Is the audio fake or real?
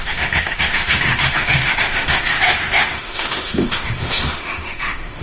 fake